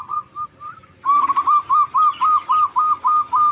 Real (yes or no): yes